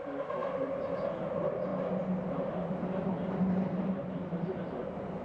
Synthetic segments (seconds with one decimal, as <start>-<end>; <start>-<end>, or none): 0.4-1.2